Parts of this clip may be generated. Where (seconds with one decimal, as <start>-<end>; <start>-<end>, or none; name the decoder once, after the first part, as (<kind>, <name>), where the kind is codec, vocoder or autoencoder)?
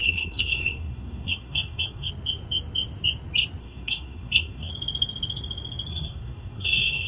0.0-2.1 (codec, SNAC); 3.6-4.7; 5.9-7.1